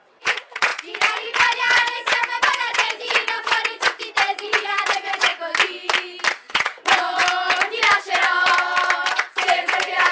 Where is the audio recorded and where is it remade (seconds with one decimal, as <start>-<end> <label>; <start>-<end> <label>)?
0.0-5.3 remade; 5.3-6.3 recorded; 6.3-7.2 remade; 7.2-9.1 recorded; 9.1-10.1 remade